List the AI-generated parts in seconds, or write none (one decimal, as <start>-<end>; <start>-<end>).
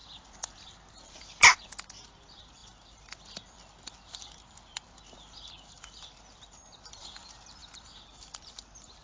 0.0-9.0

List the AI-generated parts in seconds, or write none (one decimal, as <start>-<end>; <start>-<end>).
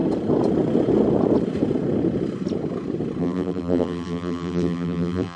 3.2-5.4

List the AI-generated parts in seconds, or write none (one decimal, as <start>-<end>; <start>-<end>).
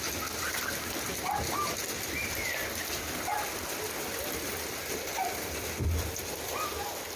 1.8-2.5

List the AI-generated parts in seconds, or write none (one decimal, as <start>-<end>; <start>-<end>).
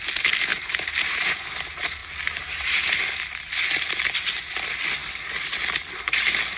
0.5-1.3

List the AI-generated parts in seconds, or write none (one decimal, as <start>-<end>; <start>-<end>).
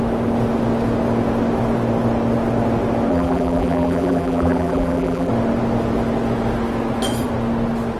3.1-5.3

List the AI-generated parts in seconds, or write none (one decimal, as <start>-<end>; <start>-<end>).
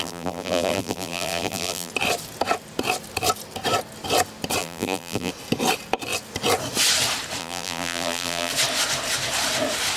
0.0-1.9; 4.6-5.3; 7.4-8.5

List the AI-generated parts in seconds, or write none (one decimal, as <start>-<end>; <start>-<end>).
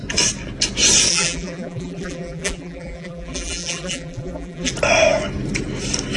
1.1-4.7